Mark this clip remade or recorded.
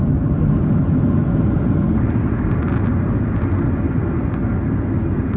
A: recorded